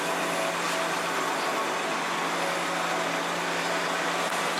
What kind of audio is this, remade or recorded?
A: recorded